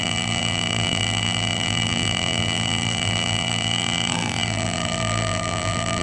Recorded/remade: remade